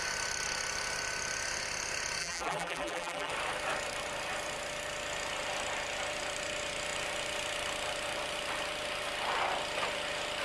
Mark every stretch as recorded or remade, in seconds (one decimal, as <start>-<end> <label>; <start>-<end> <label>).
0.0-2.2 recorded; 2.2-3.3 remade; 3.3-10.4 recorded